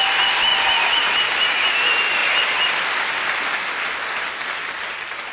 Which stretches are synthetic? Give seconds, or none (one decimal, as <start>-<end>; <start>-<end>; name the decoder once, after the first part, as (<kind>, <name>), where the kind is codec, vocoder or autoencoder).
none